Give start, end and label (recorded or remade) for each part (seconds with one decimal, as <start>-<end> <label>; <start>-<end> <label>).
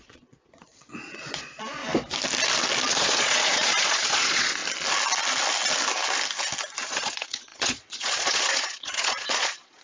0.0-1.8 remade; 1.8-2.9 recorded; 2.9-4.6 remade; 4.6-6.8 recorded; 6.8-9.8 remade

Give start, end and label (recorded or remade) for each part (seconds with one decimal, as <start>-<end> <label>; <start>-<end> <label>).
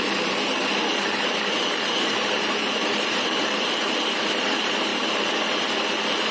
0.0-4.9 remade; 4.9-6.3 recorded